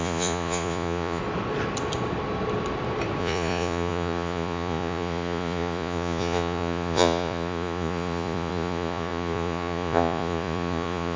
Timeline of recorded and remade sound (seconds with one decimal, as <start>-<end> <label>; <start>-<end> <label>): 0.0-1.2 remade; 1.2-3.2 recorded; 3.2-11.2 remade